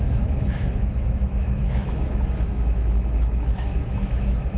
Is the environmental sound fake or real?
fake